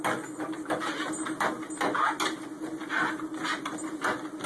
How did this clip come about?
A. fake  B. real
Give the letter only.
B